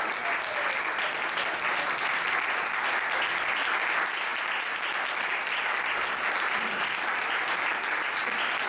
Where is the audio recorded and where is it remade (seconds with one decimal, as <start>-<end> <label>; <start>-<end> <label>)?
0.0-4.3 recorded; 4.3-6.9 remade; 6.9-8.7 recorded